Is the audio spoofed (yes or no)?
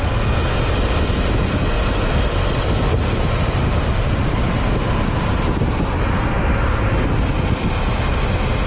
no